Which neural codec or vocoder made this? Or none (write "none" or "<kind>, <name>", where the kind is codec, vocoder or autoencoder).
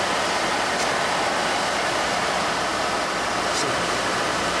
none